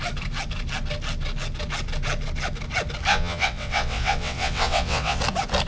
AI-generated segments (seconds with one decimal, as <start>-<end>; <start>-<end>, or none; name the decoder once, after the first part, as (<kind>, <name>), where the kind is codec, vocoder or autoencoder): 3.1-5.2 (vocoder, WaveNeXt)